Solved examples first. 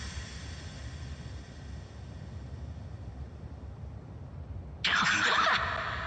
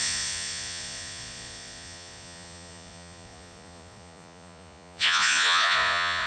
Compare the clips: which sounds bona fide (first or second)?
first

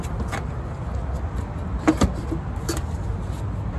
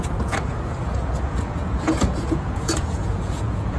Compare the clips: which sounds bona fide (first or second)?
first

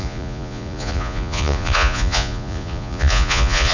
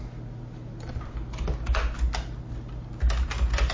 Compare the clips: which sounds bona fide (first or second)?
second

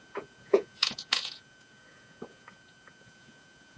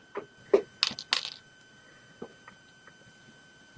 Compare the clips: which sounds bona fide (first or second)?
second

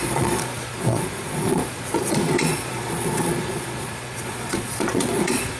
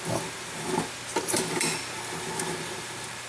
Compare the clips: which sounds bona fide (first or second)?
second